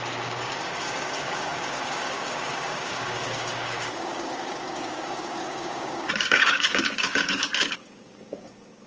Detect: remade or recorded remade